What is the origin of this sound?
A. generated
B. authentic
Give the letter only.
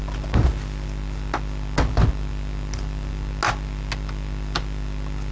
B